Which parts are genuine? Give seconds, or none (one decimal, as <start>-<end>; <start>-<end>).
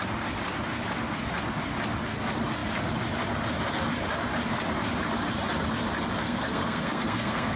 0.0-6.2